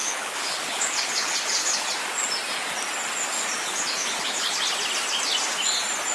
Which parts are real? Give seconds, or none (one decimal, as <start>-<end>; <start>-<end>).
1.9-3.5; 4.6-6.1